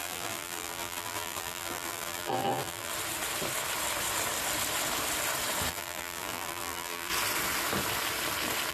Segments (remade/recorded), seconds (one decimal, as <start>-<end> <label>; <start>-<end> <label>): 0.0-2.9 remade; 2.9-5.7 recorded; 5.7-7.1 remade; 7.1-8.7 recorded